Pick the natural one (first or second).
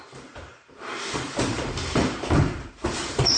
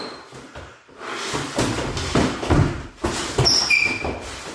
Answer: second